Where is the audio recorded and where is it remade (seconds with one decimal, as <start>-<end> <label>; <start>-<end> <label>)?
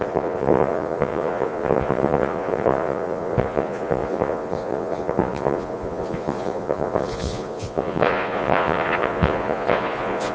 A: 0.0-10.3 remade